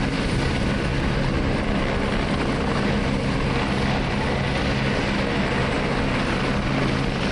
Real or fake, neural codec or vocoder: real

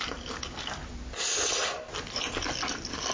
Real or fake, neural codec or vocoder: real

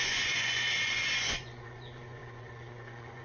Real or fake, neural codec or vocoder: fake, vocoder, Vocos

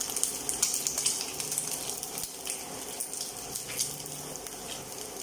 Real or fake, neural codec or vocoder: real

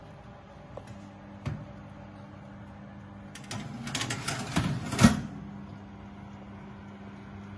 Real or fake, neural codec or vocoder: real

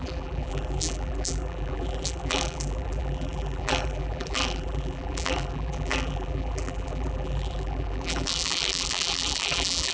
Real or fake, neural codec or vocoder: fake, vocoder, BigVGAN v2